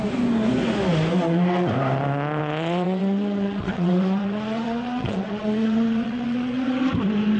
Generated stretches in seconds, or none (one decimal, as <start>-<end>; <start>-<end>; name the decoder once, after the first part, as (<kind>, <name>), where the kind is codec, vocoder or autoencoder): 2.4-6.8 (vocoder, WaveNeXt)